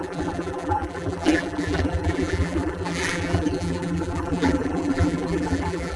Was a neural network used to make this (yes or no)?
yes